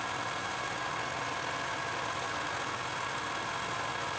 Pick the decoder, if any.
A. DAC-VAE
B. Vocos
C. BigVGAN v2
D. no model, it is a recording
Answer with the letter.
D